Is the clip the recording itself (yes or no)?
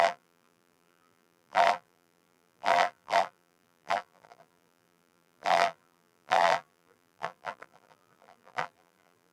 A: no